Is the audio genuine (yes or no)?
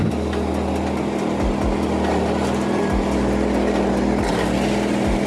yes